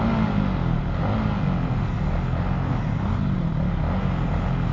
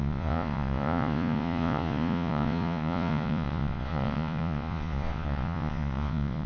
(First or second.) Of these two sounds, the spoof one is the second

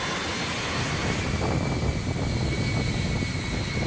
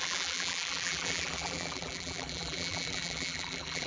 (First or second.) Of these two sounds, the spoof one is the second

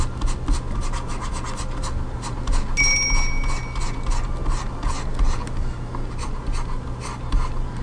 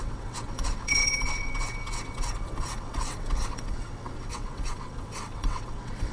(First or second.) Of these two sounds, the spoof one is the second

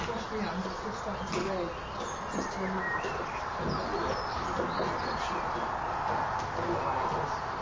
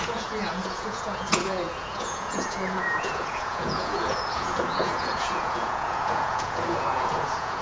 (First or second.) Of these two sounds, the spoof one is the second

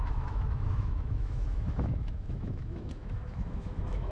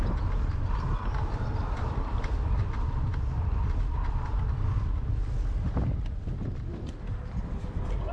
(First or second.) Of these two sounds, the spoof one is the first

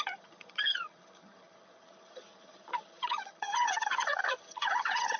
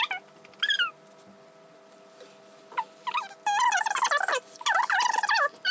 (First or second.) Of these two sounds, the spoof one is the first